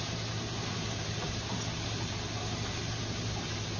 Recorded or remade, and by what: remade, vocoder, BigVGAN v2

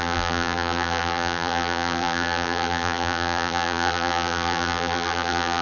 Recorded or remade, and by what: remade, vocoder, BigVGAN v2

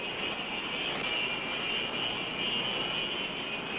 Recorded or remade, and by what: recorded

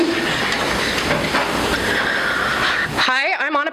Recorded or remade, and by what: recorded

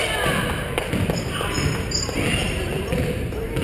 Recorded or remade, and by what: remade, vocoder, BigVGAN v2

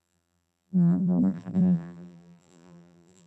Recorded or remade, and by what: remade, vocoder, BigVGAN v2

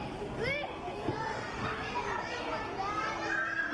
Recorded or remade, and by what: recorded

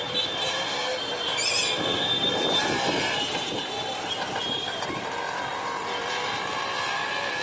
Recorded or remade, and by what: remade, vocoder, BigVGAN v2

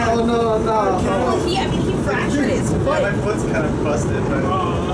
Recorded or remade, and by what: recorded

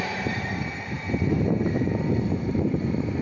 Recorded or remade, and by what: remade, vocoder, BigVGAN v2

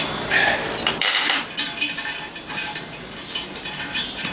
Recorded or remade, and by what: remade, vocoder, BigVGAN v2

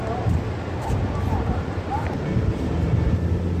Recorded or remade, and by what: recorded